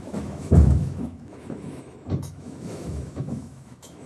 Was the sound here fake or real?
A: fake